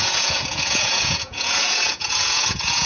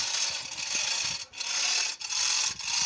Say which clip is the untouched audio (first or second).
second